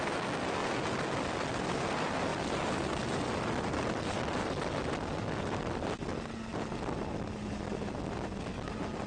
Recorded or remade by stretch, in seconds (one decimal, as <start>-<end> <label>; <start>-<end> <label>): 0.0-9.1 recorded